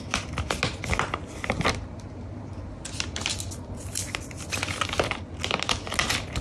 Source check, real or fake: real